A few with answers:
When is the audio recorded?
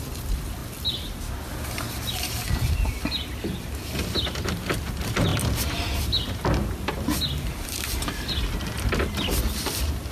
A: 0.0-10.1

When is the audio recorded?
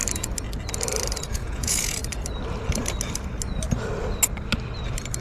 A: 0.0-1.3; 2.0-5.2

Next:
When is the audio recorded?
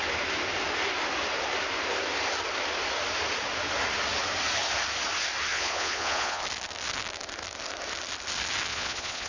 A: 0.0-5.5; 6.4-8.7